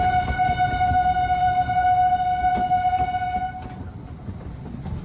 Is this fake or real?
real